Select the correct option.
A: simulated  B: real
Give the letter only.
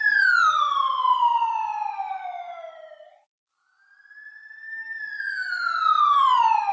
B